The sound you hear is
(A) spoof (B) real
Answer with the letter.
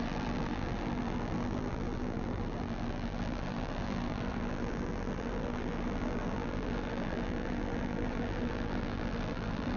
A